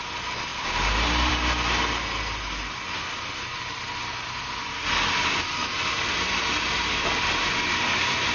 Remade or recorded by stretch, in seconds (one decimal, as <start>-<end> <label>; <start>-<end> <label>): 0.0-8.3 recorded